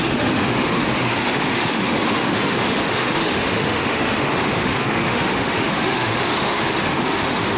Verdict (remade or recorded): remade